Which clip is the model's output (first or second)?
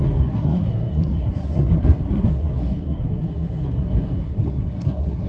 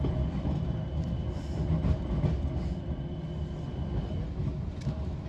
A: first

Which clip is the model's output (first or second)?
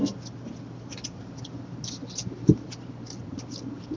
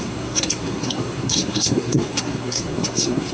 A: second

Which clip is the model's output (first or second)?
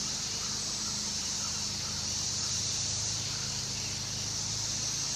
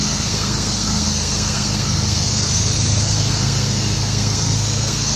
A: second